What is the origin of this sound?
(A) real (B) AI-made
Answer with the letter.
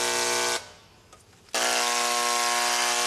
A